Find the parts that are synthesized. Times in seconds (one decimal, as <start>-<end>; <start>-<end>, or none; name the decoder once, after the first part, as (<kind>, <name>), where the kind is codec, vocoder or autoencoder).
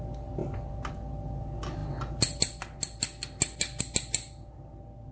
none